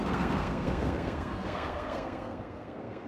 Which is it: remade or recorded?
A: remade